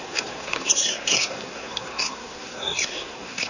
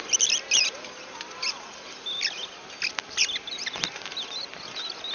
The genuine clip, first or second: second